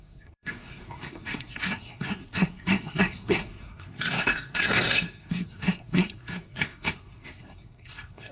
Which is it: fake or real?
fake